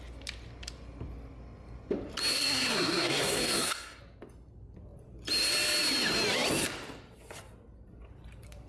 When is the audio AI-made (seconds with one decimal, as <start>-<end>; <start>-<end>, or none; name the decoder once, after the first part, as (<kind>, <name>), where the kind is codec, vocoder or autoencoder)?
2.3-4.0 (codec, SNAC)